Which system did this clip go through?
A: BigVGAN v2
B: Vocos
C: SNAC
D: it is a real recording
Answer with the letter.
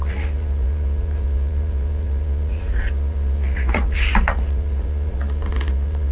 B